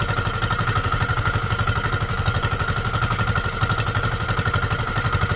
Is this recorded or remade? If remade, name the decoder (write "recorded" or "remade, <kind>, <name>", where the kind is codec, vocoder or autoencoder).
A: recorded